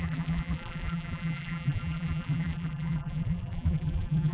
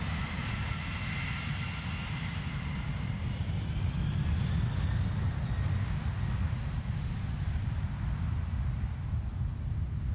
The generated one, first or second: first